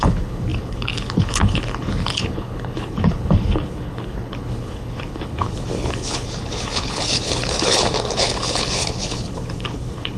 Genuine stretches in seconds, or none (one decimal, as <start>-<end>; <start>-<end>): none